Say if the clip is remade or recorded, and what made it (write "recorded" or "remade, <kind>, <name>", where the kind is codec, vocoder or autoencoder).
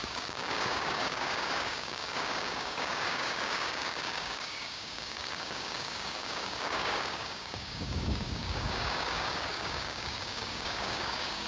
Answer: remade, codec, DAC